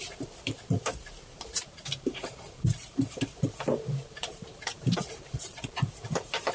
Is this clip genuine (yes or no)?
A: no